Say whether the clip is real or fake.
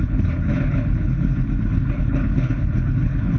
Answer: fake